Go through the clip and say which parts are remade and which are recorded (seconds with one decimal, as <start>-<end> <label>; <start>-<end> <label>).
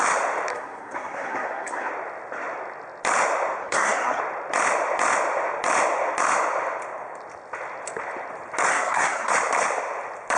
0.0-0.5 recorded; 0.5-1.9 remade; 1.9-3.6 recorded; 3.6-4.2 remade; 4.2-8.7 recorded; 8.7-9.3 remade; 9.3-10.4 recorded